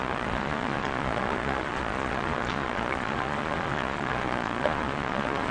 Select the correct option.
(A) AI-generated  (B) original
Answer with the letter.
A